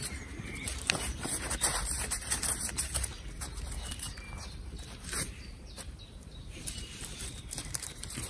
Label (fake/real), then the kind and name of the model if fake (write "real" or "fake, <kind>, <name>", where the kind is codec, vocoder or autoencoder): fake, vocoder, BigVGAN v2